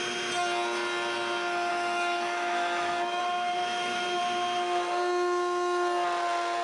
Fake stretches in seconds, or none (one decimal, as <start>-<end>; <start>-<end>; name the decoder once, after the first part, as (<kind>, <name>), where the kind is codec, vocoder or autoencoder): 1.7-3.2 (autoencoder, DAC-VAE); 3.6-4.2